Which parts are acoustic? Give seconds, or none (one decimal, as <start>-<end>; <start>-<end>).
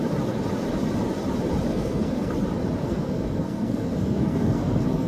0.0-1.7; 2.3-2.8